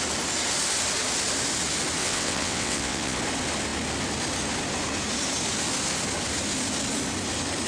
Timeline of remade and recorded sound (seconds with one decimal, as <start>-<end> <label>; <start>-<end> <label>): 0.0-2.0 recorded; 2.0-3.2 remade; 3.2-7.7 recorded